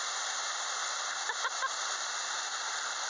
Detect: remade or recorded remade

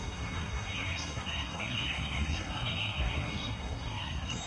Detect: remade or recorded remade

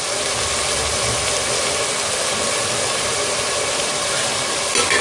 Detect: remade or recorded recorded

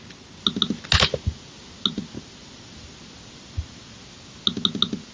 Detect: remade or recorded recorded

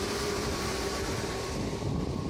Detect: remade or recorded remade